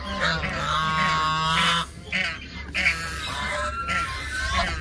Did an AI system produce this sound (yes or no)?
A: no